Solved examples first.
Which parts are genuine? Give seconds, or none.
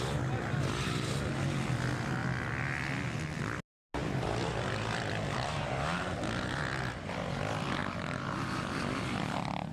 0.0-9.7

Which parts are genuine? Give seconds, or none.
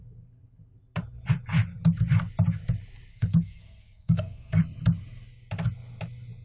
0.0-3.1; 4.6-6.4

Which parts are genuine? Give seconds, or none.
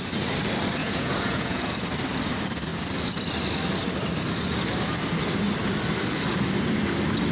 0.0-0.8; 1.7-7.3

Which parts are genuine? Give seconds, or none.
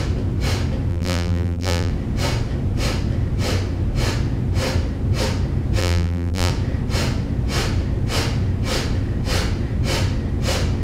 0.0-0.9; 1.9-5.8; 6.5-10.8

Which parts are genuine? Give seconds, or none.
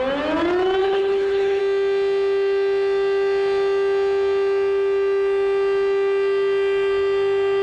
0.0-0.8; 1.6-7.6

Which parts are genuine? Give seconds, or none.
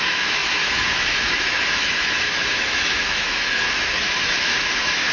none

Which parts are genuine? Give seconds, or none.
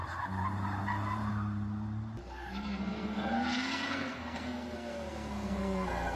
0.0-2.2